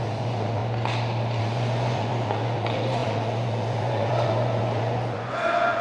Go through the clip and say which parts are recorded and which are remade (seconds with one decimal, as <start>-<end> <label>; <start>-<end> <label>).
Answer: 0.0-0.6 remade; 0.6-1.4 recorded; 1.4-5.8 remade